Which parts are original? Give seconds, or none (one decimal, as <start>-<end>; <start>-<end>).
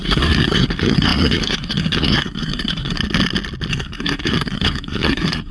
3.0-3.7